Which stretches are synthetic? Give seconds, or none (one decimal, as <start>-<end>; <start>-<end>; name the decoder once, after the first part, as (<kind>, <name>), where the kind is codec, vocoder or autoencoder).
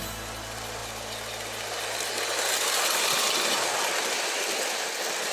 none